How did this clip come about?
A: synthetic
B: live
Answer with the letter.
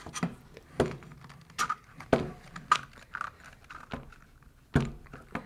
B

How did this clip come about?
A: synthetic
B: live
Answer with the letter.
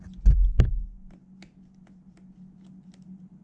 B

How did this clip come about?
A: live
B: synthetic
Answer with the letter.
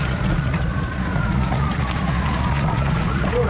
B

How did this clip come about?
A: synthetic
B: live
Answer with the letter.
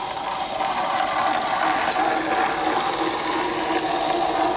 B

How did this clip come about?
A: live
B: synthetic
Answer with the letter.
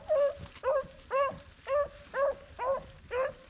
A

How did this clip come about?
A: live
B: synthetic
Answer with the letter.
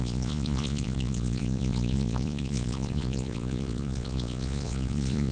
B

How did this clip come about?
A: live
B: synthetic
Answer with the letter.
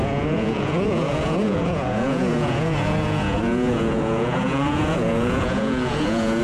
B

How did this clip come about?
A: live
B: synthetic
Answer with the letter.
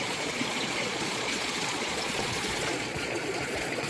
B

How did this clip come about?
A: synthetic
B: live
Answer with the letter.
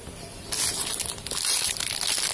B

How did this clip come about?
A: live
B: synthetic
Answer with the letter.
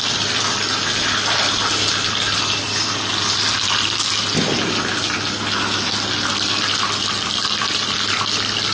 A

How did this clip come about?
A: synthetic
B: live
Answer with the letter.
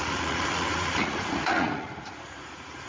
A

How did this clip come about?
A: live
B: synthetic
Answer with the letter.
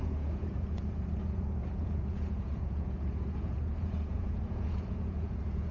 B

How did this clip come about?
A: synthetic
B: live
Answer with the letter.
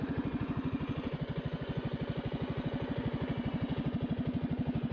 A